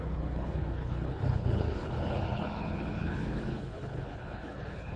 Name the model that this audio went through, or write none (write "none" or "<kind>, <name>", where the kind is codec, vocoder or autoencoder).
codec, HILCodec